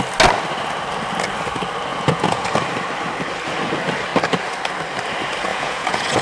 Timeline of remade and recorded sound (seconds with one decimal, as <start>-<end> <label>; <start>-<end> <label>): 0.0-1.9 recorded; 1.9-2.4 remade; 2.4-5.5 recorded; 5.5-6.2 remade